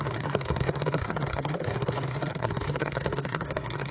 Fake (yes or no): yes